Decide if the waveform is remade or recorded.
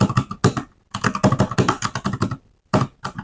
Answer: recorded